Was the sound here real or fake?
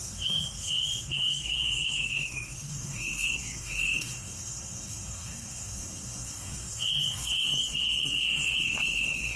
fake